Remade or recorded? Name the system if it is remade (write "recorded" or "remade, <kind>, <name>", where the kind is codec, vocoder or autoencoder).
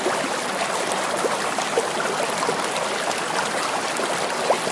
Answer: recorded